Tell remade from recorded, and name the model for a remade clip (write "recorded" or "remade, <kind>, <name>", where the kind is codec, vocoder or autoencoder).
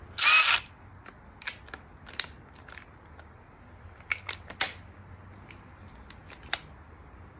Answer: recorded